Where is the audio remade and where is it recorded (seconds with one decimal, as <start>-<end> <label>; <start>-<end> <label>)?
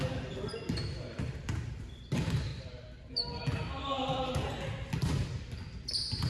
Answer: 0.0-0.5 recorded; 0.5-1.6 remade; 1.6-2.5 recorded; 2.5-3.1 remade; 3.1-6.3 recorded